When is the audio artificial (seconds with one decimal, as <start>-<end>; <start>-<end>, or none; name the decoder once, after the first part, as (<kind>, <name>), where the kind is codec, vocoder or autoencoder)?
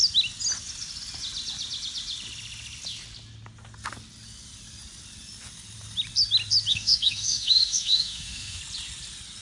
6.7-8.6 (autoencoder, DAC-VAE)